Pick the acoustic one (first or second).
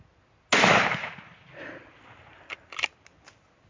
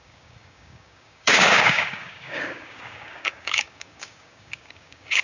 first